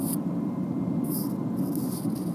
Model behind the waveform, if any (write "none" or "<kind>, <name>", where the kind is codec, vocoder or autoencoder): none